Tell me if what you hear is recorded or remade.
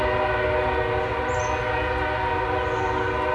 recorded